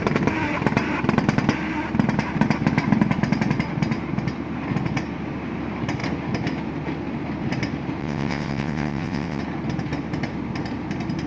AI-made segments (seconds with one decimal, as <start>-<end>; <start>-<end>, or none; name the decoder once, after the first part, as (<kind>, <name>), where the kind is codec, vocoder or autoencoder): 8.0-9.4 (vocoder, WaveNeXt)